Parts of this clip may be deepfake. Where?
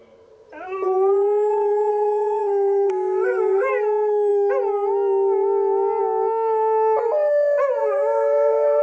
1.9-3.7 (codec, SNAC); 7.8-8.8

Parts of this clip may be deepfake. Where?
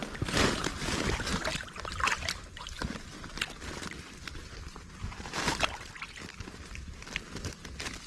none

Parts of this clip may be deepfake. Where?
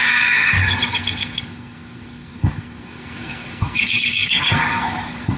0.0-5.4 (codec, SNAC)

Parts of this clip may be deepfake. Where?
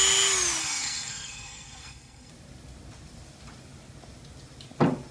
0.6-2.3 (codec, SNAC)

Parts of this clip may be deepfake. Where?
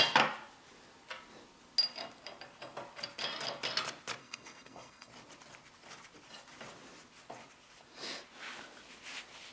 4.2-5.1 (codec, SNAC)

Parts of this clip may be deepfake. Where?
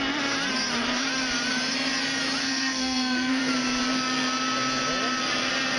2.4-3.4 (codec, SNAC)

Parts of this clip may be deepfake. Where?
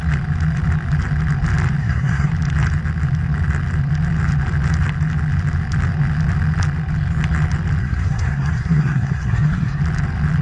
1.8-2.3 (codec, SNAC); 7.8-9.8